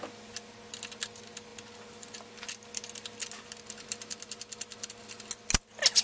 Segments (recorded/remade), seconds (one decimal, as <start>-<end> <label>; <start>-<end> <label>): 0.0-6.0 recorded